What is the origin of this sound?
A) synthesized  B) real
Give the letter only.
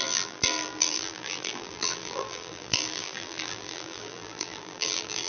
A